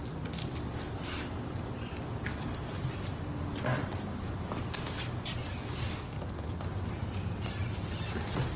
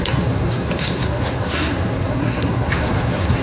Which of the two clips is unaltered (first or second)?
first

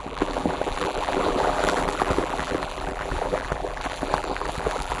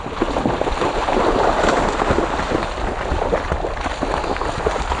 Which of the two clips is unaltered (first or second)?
second